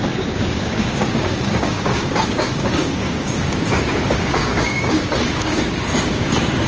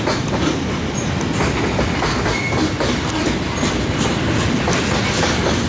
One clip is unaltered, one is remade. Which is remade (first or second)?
first